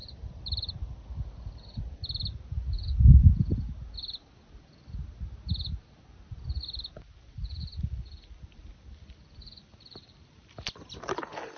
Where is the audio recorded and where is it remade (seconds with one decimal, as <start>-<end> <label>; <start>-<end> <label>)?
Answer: 0.0-0.7 remade; 0.7-11.6 recorded